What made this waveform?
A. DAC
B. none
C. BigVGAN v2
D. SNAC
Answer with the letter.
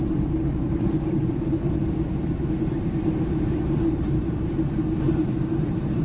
C